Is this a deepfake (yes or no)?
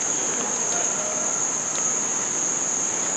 no